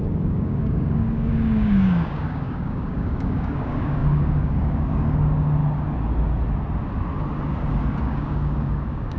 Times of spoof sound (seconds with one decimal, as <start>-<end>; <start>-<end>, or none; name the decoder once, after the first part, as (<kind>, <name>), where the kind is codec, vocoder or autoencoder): 0.0-5.6 (codec, DAC); 8.0-9.2